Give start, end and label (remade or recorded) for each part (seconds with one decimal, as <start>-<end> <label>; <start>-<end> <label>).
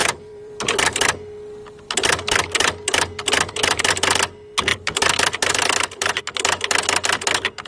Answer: 0.0-3.9 remade; 3.9-4.7 recorded; 4.7-6.2 remade; 6.2-7.7 recorded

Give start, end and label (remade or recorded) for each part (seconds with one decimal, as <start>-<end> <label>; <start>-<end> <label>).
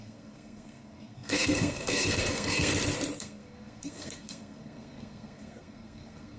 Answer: 0.0-2.7 remade; 2.7-3.2 recorded; 3.2-6.4 remade